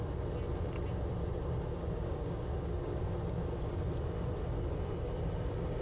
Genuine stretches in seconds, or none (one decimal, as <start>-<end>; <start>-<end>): 0.0-1.7; 3.0-5.8